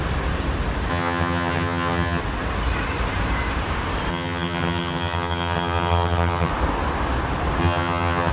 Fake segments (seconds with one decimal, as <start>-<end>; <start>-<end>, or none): 0.9-2.2; 4.1-6.5; 7.6-8.3